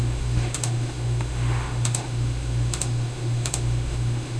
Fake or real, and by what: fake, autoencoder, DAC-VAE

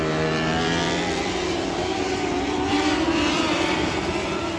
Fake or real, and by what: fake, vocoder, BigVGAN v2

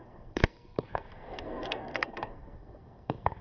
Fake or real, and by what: fake, codec, SNAC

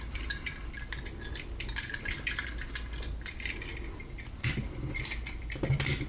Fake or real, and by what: real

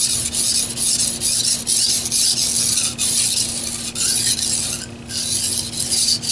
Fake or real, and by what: real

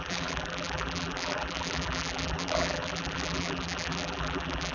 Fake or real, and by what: fake, vocoder, BigVGAN v2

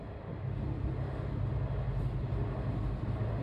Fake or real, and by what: real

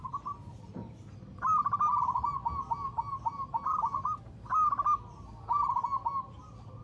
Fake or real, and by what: real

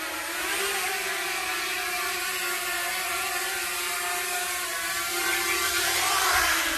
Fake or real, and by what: fake, vocoder, BigVGAN v2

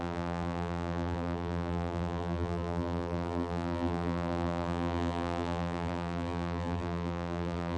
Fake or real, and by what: fake, vocoder, BigVGAN v2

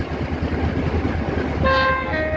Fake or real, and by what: real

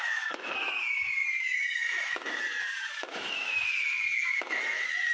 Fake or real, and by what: fake, autoencoder, DAC-VAE